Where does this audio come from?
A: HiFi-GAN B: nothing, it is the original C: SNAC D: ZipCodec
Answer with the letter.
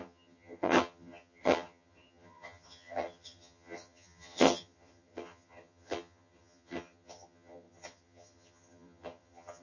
A